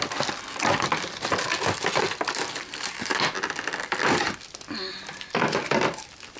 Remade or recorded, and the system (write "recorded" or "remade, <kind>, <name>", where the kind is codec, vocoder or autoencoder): recorded